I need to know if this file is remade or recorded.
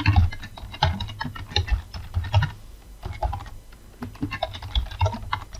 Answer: recorded